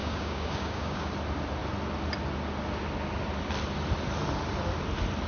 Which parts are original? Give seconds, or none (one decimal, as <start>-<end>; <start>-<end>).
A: 1.1-5.3